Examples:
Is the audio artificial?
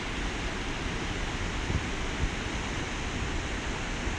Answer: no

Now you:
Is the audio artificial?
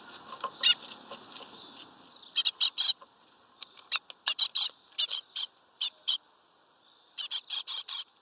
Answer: no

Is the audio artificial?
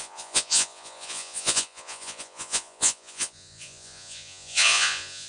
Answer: yes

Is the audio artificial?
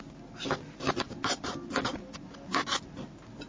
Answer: no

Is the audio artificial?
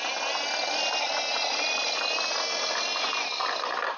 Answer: no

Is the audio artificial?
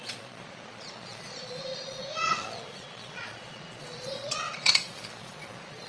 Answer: yes